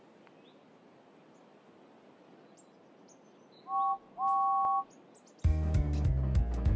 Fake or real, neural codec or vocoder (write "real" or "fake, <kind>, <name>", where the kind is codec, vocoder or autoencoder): real